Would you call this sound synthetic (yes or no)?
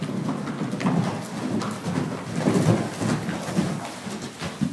no